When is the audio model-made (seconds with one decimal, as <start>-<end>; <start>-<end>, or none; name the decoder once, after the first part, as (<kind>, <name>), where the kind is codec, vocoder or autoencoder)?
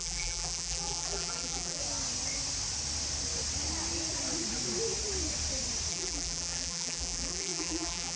0.0-1.8 (vocoder, BigVGAN v2); 5.9-8.2